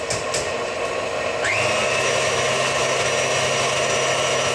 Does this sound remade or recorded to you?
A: recorded